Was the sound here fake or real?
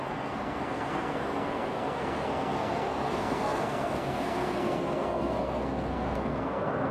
fake